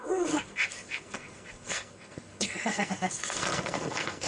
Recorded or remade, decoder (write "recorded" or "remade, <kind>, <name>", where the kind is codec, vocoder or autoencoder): remade, codec, SNAC